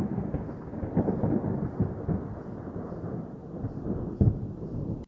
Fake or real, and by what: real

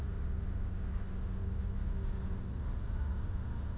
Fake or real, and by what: real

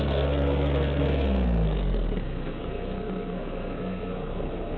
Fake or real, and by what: fake, codec, SNAC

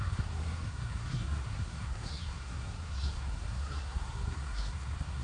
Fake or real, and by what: fake, codec, SNAC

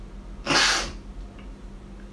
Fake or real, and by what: real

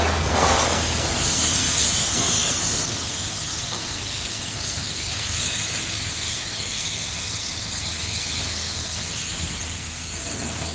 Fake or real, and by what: fake, codec, SNAC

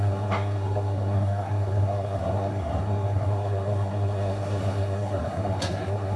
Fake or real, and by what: fake, codec, SNAC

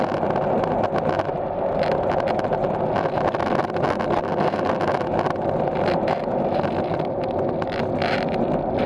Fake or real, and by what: real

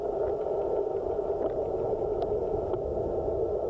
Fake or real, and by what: real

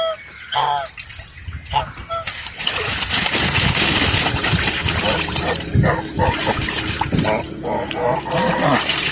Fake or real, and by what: real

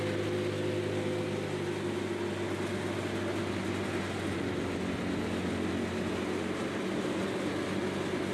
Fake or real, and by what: real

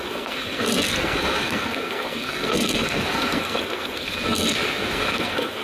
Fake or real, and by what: fake, codec, SNAC